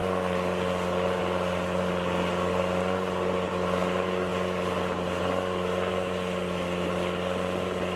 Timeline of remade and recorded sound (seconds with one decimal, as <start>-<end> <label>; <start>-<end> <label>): 0.0-8.0 recorded